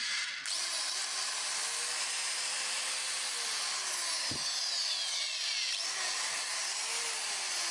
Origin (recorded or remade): recorded